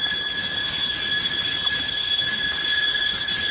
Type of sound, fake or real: real